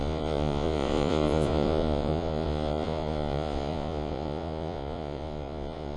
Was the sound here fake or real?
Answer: fake